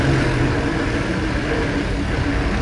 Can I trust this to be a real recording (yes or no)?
yes